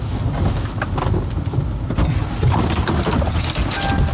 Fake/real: real